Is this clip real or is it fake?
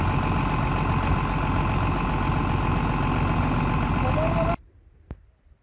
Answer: real